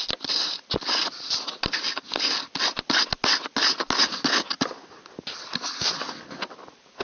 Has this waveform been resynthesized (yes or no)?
no